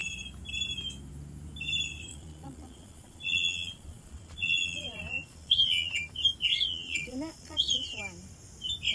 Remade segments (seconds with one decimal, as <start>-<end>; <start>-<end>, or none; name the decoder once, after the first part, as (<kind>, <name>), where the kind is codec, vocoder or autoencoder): 2.1-6.1 (vocoder, Vocos); 6.5-8.0